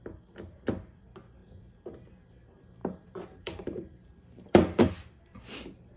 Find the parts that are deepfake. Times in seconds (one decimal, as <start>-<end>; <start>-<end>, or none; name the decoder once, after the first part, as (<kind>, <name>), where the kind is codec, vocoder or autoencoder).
1.4-2.1 (vocoder, BigVGAN v2); 2.8-4.9